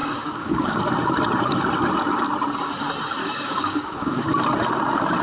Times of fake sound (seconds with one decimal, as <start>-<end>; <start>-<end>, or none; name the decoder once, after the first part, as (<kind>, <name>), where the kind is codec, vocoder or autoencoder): 0.0-0.8 (codec, DAC); 3.2-4.3